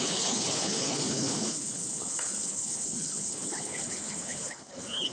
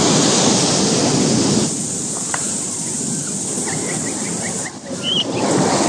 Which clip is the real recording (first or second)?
second